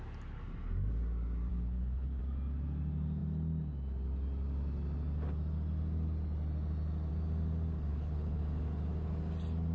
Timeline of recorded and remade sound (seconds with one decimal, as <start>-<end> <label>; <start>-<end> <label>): 0.0-1.5 recorded; 1.5-2.2 remade; 2.2-7.9 recorded; 7.9-8.4 remade; 8.4-9.7 recorded